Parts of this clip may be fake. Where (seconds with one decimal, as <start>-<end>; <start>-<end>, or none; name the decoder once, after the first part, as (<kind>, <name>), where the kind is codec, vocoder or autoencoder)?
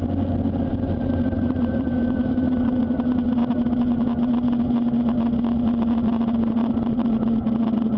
0.7-2.8 (vocoder, BigVGAN v2)